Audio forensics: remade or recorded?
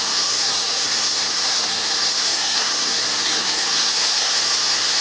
remade